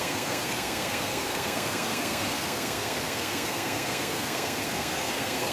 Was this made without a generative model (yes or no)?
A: no